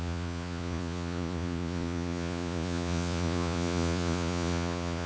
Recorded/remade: remade